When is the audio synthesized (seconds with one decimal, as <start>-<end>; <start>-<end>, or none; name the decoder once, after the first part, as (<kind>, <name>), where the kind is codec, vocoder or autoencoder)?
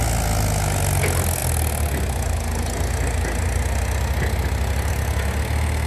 none